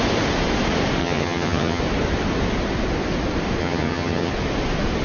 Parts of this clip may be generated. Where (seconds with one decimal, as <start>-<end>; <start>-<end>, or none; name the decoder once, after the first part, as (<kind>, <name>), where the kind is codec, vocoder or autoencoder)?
1.0-1.8 (vocoder, HiFi-GAN); 3.6-4.3